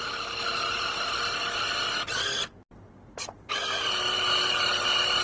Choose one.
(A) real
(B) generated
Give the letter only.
A